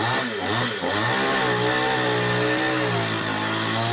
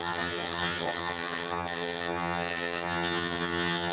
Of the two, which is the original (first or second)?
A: first